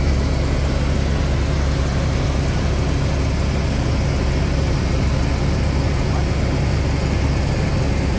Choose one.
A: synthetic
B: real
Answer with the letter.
B